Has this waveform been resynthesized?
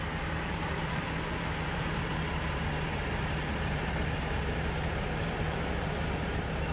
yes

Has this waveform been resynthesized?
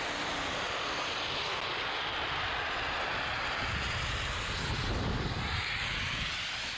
no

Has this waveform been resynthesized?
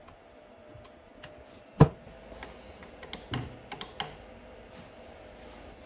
no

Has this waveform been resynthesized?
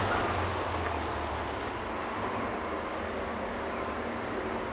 no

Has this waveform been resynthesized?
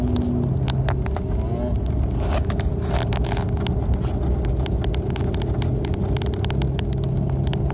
no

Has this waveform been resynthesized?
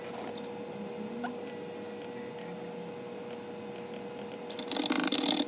no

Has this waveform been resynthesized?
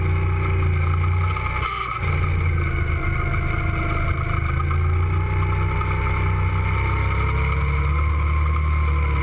no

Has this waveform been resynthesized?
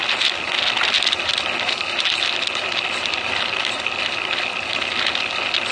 no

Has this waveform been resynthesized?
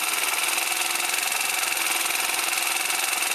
no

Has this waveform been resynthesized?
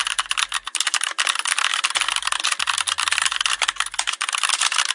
no